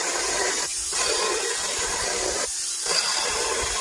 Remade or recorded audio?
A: recorded